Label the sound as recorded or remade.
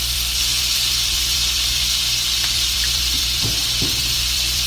remade